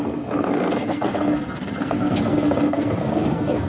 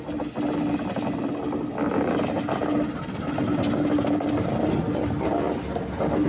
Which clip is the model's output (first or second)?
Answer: first